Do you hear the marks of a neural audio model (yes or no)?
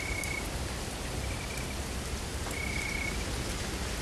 no